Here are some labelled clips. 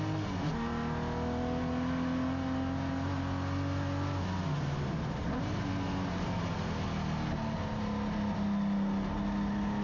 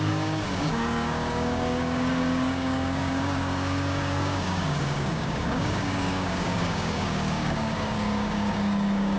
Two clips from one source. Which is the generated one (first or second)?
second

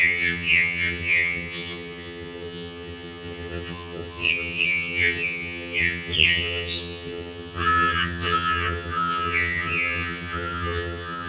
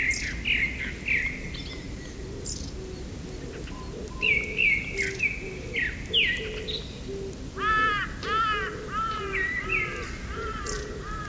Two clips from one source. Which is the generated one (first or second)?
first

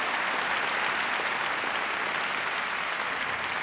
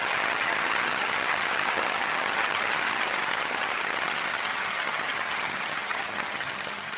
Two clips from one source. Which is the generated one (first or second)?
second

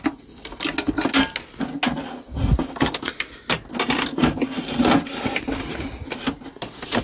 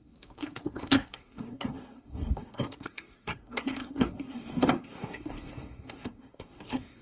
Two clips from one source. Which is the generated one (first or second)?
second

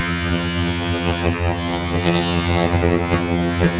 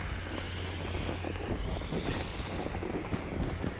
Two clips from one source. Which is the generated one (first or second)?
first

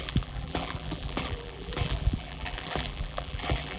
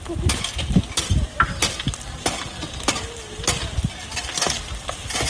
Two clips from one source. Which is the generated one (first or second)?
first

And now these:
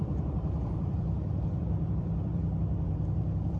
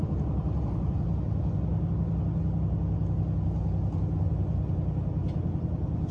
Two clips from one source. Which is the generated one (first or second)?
first